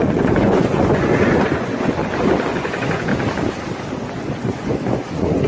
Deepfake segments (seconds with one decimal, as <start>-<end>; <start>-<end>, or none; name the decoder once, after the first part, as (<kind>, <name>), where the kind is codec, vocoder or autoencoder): 0.0-2.0 (vocoder, Vocos); 2.5-3.1; 4.1-5.5